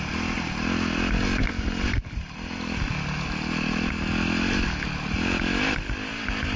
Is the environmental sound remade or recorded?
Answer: recorded